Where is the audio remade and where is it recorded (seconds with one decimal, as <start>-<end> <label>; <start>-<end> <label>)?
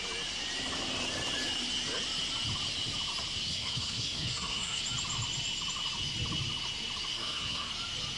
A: 0.0-3.5 recorded; 3.5-4.8 remade; 4.8-7.1 recorded; 7.1-7.7 remade; 7.7-8.2 recorded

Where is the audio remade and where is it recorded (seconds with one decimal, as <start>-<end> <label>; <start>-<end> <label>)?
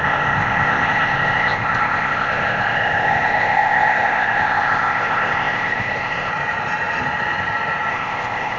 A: 0.0-6.3 remade; 6.3-7.9 recorded; 7.9-8.6 remade